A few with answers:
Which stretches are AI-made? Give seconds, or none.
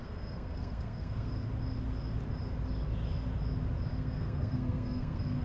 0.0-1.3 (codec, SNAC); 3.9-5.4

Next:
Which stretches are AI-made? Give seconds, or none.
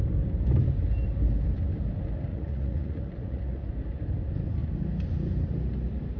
2.3-3.7 (vocoder, Vocos)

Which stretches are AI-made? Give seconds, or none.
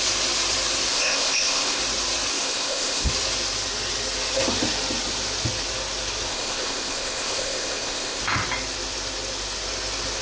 0.9-1.8 (codec, ZipCodec); 2.3-3.1; 6.3-8.2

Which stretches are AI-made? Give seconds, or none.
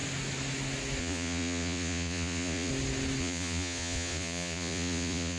1.0-2.7 (vocoder, Vocos); 3.2-5.4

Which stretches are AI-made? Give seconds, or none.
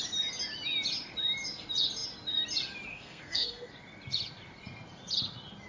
2.9-3.7 (codec, SNAC)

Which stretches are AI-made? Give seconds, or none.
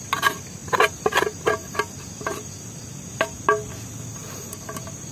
none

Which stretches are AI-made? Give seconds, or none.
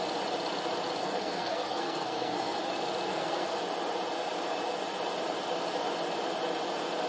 1.0-2.7 (codec, SNAC); 3.1-3.6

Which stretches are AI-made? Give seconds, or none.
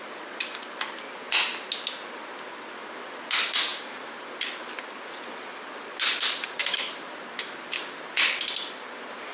none